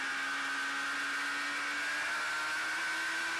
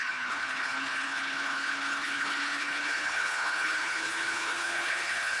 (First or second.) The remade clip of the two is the second